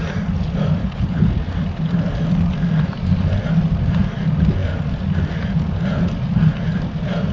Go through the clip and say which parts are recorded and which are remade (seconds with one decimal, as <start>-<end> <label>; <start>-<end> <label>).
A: 0.0-0.8 recorded; 0.8-1.3 remade; 1.3-7.3 recorded